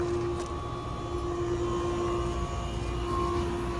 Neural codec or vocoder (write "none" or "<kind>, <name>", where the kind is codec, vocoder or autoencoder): none